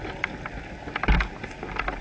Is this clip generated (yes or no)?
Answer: no